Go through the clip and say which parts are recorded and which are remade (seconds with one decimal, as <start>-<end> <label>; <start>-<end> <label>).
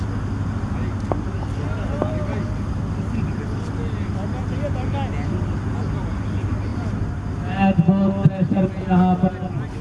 0.0-9.8 recorded